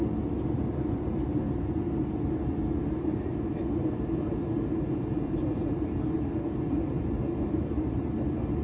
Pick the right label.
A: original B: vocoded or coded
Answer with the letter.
B